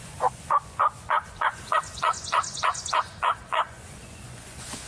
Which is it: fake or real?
fake